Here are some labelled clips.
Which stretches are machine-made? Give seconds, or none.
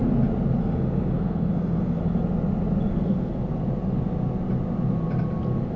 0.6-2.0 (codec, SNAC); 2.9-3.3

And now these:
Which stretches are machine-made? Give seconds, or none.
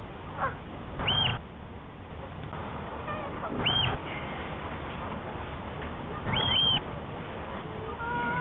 none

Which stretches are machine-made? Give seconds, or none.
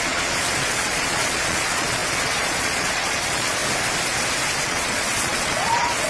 0.0-3.6 (vocoder, Vocos); 4.6-6.1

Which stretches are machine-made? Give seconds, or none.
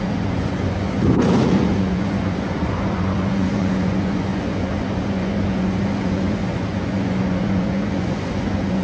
0.0-8.8 (vocoder, Vocos)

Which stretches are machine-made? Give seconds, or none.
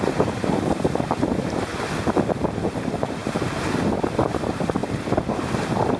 0.0-1.7 (vocoder, BigVGAN v2); 2.6-4.8; 5.3-6.0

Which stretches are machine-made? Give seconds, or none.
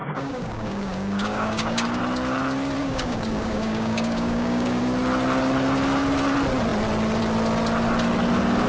0.0-2.0 (codec, DAC); 2.8-4.8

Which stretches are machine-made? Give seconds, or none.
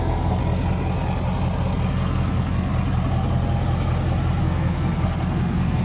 0.0-0.4 (codec, SNAC); 1.9-2.7; 4.4-5.8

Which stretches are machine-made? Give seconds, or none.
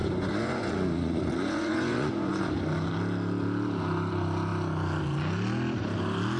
0.0-2.5 (vocoder, Vocos)